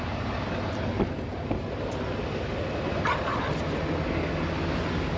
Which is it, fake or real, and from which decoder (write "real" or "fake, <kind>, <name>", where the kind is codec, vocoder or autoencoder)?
real